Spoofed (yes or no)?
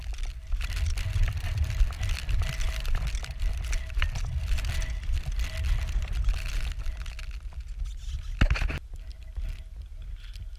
no